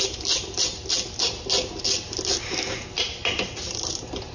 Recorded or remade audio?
recorded